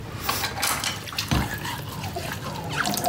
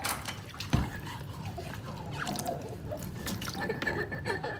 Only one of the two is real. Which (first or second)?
first